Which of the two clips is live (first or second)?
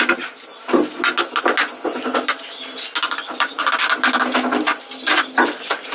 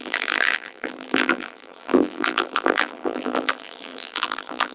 first